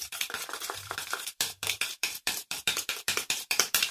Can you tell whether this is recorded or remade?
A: remade